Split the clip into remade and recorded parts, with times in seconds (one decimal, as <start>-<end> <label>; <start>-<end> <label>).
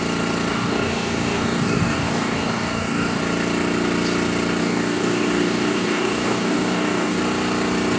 0.0-0.5 recorded; 0.5-3.2 remade; 3.2-4.6 recorded; 4.6-7.2 remade; 7.2-8.0 recorded